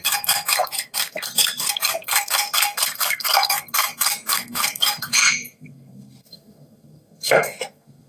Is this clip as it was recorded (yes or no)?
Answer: no